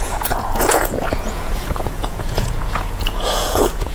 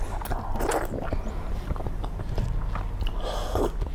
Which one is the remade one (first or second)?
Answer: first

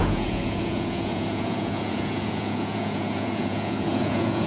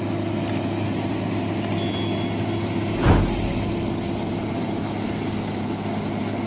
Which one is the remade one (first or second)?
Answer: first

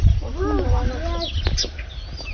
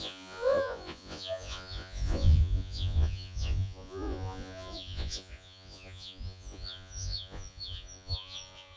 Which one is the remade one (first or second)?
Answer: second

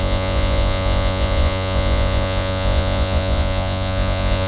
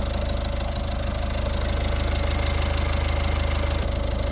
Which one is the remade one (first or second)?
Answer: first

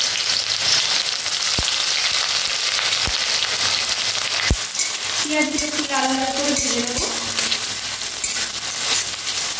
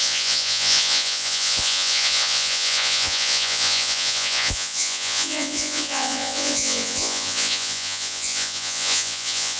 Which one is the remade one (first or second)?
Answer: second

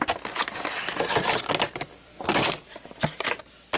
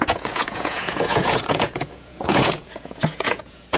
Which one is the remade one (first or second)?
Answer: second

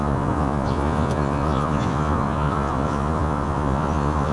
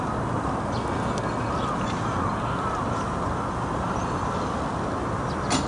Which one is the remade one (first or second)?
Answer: first